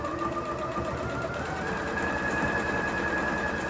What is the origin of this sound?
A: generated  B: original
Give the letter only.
B